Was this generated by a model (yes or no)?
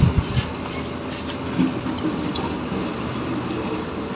no